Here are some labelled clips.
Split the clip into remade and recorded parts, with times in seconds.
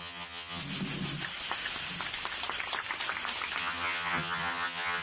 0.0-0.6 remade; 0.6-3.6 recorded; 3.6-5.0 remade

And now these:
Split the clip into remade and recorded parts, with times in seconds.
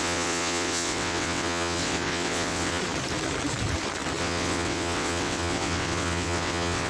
0.0-2.8 remade; 2.8-4.2 recorded; 4.2-6.9 remade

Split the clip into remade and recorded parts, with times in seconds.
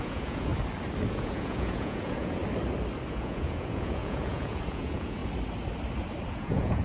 0.0-0.5 remade; 0.5-1.1 recorded; 1.1-2.4 remade; 2.4-3.1 recorded; 3.1-5.2 remade; 5.2-6.3 recorded; 6.3-6.8 remade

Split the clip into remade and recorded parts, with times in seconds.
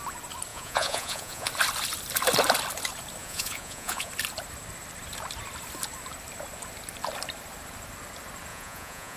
0.0-0.5 recorded; 0.5-1.5 remade; 1.5-3.2 recorded; 3.2-4.1 remade; 4.1-8.5 recorded; 8.5-9.2 remade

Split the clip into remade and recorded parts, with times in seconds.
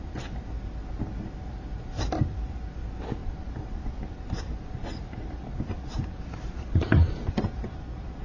0.0-3.2 recorded; 3.2-7.3 remade; 7.3-8.2 recorded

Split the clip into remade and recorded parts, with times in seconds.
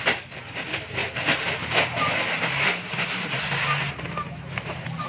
0.0-1.0 recorded; 1.0-3.4 remade; 3.4-5.1 recorded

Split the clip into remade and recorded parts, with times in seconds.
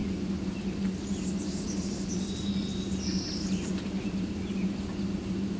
0.0-5.6 recorded